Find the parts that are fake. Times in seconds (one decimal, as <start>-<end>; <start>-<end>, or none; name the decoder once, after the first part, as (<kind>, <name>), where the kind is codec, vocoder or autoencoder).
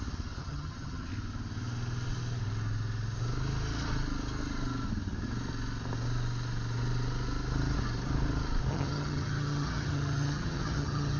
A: 0.4-1.1 (vocoder, HiFi-GAN); 8.7-11.2